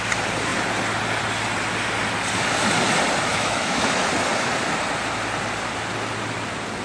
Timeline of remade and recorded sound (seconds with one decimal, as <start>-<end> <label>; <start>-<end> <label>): 0.0-3.3 recorded; 3.3-4.0 remade; 4.0-6.8 recorded